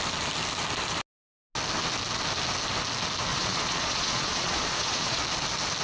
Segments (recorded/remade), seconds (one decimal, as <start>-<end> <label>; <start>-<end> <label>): 0.0-3.3 recorded; 3.3-5.2 remade; 5.2-5.8 recorded